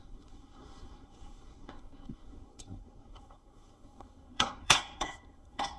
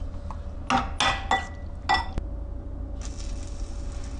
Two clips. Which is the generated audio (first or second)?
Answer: first